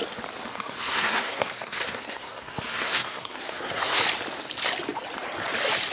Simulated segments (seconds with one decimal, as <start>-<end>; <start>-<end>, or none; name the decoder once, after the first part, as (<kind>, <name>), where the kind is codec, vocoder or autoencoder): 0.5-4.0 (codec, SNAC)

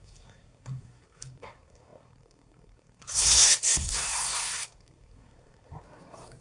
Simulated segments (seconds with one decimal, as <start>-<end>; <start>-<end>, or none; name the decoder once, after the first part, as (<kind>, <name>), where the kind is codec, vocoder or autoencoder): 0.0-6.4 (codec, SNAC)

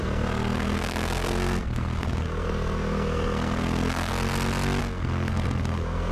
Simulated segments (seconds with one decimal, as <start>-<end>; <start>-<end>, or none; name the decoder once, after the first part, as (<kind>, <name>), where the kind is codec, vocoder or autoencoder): 0.0-4.1 (codec, SNAC); 4.8-6.1